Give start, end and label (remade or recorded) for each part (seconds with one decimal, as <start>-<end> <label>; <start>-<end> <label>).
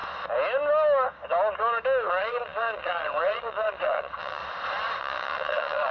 0.0-2.1 recorded; 2.1-4.4 remade; 4.4-5.0 recorded; 5.0-5.9 remade